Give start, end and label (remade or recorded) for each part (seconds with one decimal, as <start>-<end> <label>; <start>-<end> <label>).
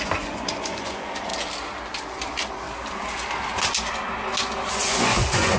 0.0-1.3 remade; 1.3-4.7 recorded; 4.7-5.6 remade